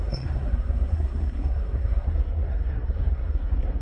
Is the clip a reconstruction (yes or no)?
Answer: yes